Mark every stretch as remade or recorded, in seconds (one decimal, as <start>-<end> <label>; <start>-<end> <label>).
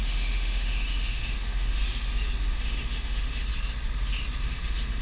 0.0-1.8 remade; 1.8-2.5 recorded; 2.5-3.5 remade; 3.5-4.4 recorded; 4.4-5.0 remade